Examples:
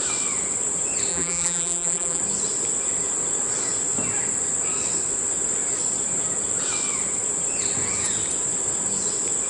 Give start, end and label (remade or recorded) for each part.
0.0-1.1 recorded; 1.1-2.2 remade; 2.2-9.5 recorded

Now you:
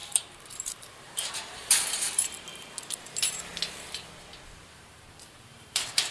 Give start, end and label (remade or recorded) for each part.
0.0-2.5 remade; 2.5-3.0 recorded; 3.0-3.5 remade; 3.5-4.6 recorded; 4.6-6.1 remade

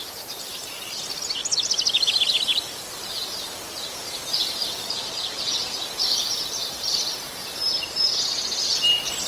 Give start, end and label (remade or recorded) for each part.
0.0-1.0 remade; 1.0-2.5 recorded; 2.5-7.6 remade; 7.6-9.3 recorded

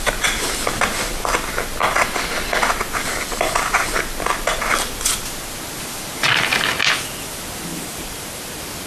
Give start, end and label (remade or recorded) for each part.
0.0-7.7 recorded; 7.7-8.4 remade; 8.4-8.9 recorded

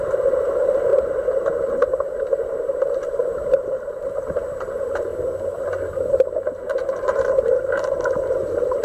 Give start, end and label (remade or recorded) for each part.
0.0-5.1 remade; 5.1-6.8 recorded; 6.8-8.8 remade

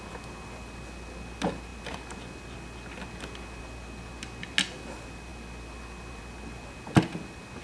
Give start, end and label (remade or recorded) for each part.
0.0-7.6 recorded

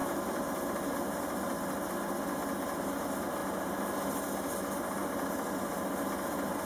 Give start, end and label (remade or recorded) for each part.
0.0-2.2 remade; 2.2-6.7 recorded